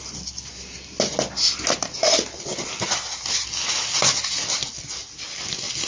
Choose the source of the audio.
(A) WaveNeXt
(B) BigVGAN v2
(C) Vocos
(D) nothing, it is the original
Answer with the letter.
D